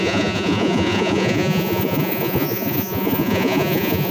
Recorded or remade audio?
remade